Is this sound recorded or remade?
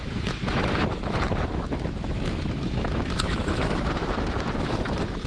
remade